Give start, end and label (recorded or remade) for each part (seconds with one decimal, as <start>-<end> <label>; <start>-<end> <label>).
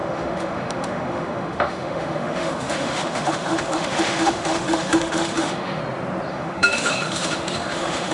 0.0-5.8 remade; 5.8-6.3 recorded; 6.3-8.1 remade